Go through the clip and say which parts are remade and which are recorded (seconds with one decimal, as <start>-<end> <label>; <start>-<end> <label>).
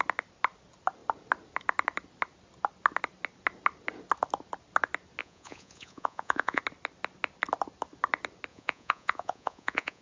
0.0-5.2 recorded; 5.2-6.6 remade; 6.6-8.5 recorded; 8.5-10.0 remade